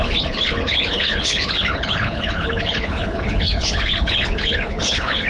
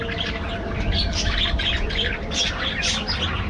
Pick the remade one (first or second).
first